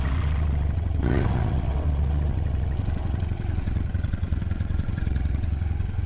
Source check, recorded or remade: remade